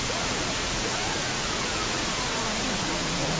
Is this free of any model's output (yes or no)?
no